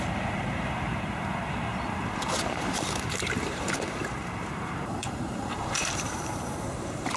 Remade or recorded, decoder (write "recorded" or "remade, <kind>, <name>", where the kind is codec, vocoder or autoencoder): remade, vocoder, BigVGAN v2